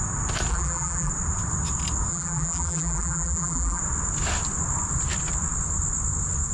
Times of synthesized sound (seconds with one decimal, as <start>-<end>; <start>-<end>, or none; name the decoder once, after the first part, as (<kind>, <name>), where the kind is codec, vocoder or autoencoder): 0.5-1.1 (vocoder, BigVGAN v2); 2.1-3.8